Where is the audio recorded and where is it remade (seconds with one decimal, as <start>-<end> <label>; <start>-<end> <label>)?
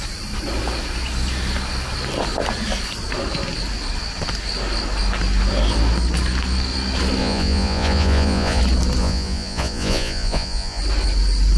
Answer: 0.0-7.2 recorded; 7.2-8.6 remade; 8.6-9.0 recorded; 9.0-10.8 remade; 10.8-11.6 recorded